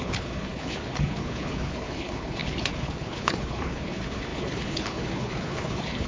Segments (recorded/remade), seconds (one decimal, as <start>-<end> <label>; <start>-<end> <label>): 0.0-6.1 remade